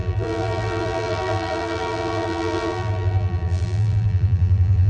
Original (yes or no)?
no